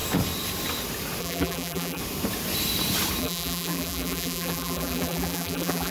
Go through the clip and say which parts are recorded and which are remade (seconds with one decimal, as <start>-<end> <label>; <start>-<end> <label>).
0.0-1.2 recorded; 1.2-2.0 remade; 2.0-3.2 recorded; 3.2-5.9 remade